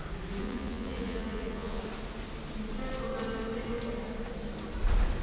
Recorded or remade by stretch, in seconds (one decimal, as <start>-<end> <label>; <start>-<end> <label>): 0.0-0.4 recorded; 0.4-1.8 remade; 1.8-5.2 recorded